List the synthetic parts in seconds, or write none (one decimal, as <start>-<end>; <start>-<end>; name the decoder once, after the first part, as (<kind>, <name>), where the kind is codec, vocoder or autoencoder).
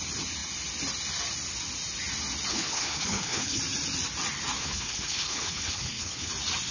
2.5-3.6 (codec, HILCodec); 4.6-6.3